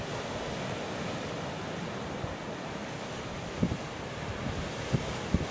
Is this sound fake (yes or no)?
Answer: no